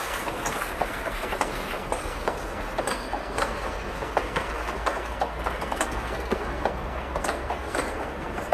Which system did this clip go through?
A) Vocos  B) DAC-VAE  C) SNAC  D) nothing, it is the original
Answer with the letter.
C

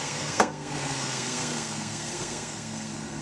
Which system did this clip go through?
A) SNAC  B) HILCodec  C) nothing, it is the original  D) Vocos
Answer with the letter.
A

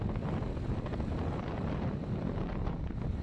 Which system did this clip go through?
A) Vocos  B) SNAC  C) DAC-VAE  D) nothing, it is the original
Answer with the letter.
D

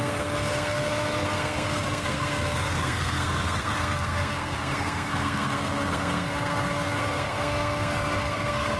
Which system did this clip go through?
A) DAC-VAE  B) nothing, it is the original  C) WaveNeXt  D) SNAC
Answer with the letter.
D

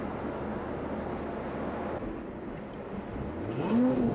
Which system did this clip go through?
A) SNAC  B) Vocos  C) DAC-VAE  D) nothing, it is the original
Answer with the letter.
D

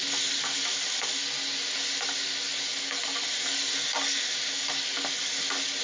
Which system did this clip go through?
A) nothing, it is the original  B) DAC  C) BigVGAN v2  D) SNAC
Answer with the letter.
A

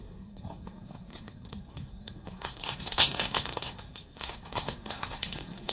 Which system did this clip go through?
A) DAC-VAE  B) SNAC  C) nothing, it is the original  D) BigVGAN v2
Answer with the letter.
B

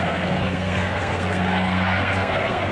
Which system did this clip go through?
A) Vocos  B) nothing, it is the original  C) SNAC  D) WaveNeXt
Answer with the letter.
C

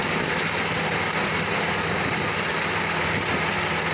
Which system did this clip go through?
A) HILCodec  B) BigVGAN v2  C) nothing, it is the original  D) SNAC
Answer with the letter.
C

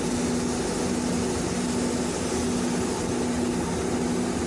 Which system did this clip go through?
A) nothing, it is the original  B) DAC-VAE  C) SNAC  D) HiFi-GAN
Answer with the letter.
A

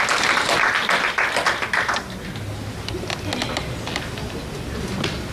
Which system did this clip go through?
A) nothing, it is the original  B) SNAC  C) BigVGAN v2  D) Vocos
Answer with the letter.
A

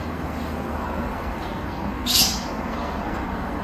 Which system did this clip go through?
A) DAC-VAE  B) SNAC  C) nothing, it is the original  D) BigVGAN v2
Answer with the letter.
B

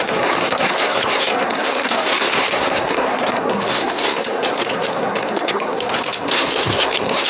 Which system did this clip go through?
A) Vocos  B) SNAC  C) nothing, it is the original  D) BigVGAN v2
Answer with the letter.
B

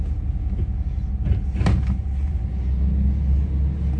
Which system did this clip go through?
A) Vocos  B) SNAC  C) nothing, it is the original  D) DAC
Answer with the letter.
C